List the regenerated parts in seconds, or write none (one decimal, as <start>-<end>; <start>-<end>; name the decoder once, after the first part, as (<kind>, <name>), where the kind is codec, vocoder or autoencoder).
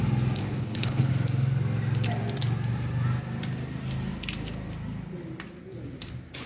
0.4-1.1 (codec, HILCodec)